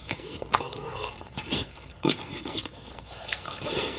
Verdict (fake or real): fake